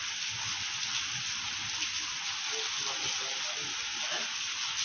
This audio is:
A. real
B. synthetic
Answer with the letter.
A